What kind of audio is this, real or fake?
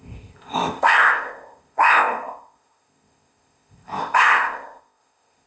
fake